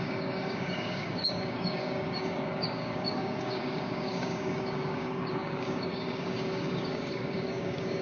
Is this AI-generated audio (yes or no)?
yes